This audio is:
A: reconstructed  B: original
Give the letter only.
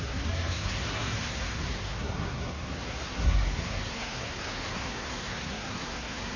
A